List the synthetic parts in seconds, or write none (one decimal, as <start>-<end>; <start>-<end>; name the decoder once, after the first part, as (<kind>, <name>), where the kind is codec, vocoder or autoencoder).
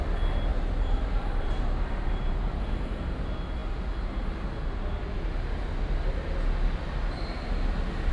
0.5-2.6 (vocoder, BigVGAN v2)